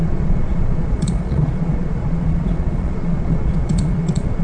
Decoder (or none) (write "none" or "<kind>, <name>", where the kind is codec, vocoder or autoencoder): vocoder, Vocos